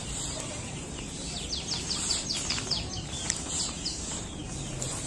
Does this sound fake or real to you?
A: fake